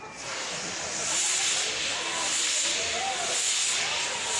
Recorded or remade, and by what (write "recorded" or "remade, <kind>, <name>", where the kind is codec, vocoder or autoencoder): recorded